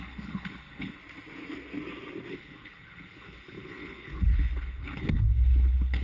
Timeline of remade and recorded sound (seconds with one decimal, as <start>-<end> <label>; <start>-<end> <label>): 0.0-1.0 remade; 1.0-2.3 recorded; 2.3-6.0 remade